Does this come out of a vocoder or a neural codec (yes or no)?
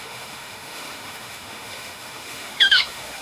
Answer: yes